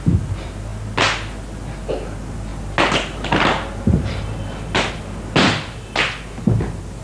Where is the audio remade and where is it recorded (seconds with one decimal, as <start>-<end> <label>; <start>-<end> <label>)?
0.0-7.0 recorded